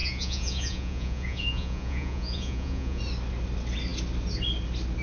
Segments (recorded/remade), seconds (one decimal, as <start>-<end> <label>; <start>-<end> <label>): 0.0-3.0 remade; 3.0-5.0 recorded